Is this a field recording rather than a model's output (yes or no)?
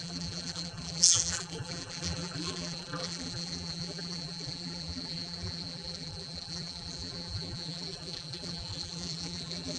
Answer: no